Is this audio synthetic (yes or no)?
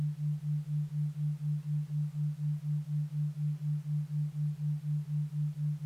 no